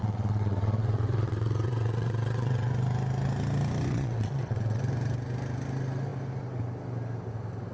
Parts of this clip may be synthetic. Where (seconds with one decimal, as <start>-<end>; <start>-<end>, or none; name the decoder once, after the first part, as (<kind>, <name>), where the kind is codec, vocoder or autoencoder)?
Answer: 0.0-2.7 (vocoder, WaveNeXt); 3.9-4.8